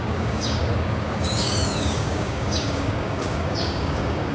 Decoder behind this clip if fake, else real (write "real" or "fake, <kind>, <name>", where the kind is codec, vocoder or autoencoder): fake, codec, DAC